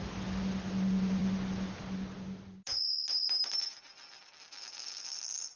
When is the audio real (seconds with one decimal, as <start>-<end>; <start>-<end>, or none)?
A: 0.0-5.6